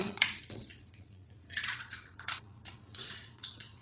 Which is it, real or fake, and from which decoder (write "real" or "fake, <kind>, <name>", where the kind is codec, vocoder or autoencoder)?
fake, vocoder, Vocos